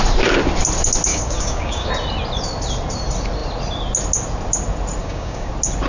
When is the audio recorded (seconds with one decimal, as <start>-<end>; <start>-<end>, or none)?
0.0-1.1; 1.9-5.0; 5.5-5.9